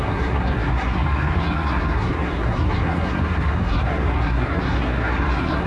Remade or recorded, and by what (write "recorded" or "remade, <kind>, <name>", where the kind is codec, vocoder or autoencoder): remade, codec, SNAC